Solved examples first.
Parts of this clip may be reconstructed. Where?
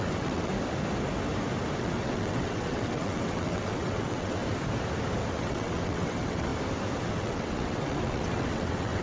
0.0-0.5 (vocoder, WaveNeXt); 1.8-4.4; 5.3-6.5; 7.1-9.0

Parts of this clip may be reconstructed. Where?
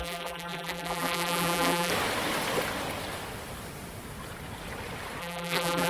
0.0-1.9 (vocoder, BigVGAN v2); 5.2-5.9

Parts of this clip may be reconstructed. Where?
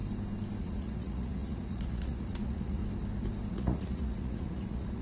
0.6-2.8 (vocoder, Vocos); 3.5-5.0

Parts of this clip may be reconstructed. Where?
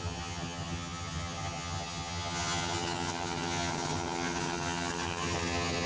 0.0-5.9 (vocoder, HiFi-GAN)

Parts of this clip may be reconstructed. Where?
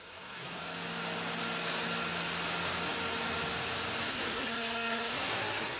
0.0-0.6 (codec, SNAC); 4.1-5.8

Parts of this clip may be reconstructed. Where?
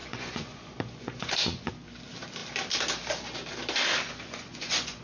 0.0-1.7 (vocoder, Vocos); 4.0-5.0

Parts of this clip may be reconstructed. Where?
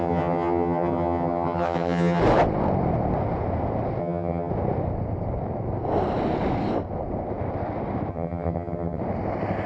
0.0-2.2 (vocoder, HiFi-GAN); 4.0-4.5; 8.1-9.0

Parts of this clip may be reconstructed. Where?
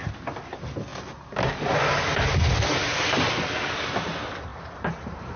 4.5-5.4 (vocoder, BigVGAN v2)